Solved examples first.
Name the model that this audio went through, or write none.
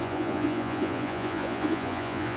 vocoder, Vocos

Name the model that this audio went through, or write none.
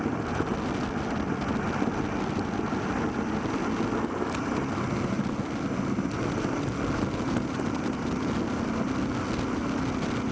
none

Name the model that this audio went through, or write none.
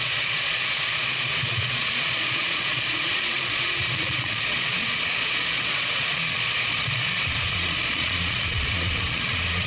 vocoder, Vocos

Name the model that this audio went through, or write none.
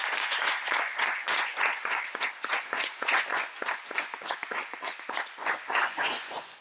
vocoder, Vocos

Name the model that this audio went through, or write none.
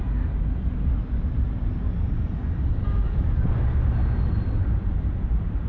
none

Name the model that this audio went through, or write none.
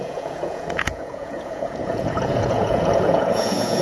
vocoder, Vocos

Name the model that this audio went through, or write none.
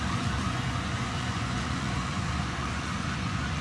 vocoder, Vocos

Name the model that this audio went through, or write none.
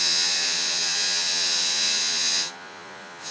vocoder, Vocos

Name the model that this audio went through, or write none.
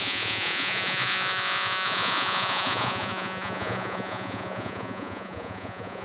vocoder, Vocos